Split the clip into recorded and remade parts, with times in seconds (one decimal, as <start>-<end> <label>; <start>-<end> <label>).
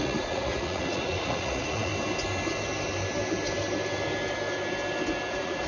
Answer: 0.0-1.9 remade; 1.9-5.3 recorded; 5.3-5.7 remade